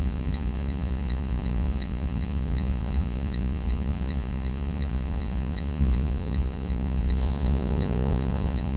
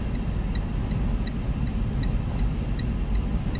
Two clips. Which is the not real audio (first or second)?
first